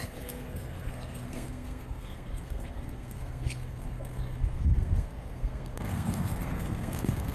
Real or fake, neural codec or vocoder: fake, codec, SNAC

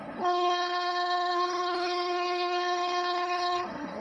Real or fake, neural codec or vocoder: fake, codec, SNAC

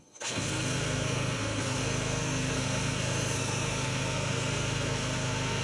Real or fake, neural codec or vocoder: fake, codec, SNAC